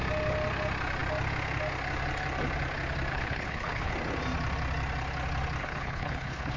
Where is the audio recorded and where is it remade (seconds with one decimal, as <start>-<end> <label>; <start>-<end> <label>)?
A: 0.0-3.1 recorded; 3.1-3.9 remade; 3.9-5.6 recorded; 5.6-6.6 remade